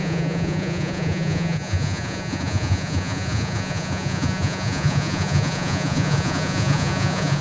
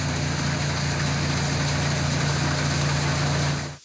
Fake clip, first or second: first